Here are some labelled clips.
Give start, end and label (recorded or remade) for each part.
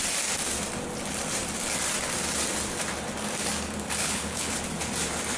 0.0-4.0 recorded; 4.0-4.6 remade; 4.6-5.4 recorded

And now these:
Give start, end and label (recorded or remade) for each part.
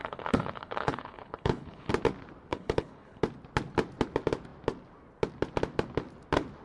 0.0-1.9 remade; 1.9-2.5 recorded; 2.5-3.2 remade; 3.2-6.6 recorded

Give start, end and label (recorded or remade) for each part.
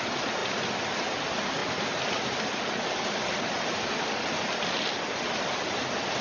0.0-6.2 recorded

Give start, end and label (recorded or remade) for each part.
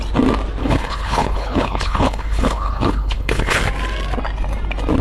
0.0-0.6 recorded; 0.6-3.6 remade; 3.6-5.0 recorded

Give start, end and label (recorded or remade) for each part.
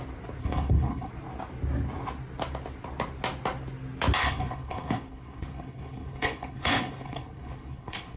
0.0-0.4 recorded; 0.4-1.1 remade; 1.1-4.2 recorded; 4.2-8.2 remade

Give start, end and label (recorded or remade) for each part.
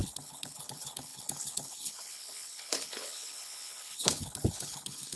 0.0-5.2 remade